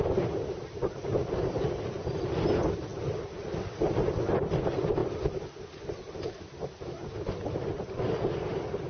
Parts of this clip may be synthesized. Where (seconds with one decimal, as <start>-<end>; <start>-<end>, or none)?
none